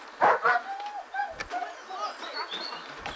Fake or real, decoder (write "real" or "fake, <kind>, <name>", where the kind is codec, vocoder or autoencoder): real